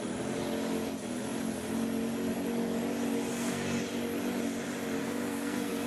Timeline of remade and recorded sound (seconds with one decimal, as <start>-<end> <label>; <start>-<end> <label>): 0.0-3.3 recorded; 3.3-3.8 remade; 3.8-5.0 recorded; 5.0-5.9 remade